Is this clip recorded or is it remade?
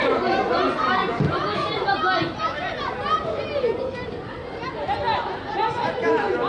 recorded